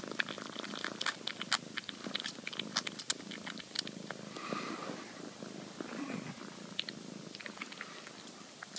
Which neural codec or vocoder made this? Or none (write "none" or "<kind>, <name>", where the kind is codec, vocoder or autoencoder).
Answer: none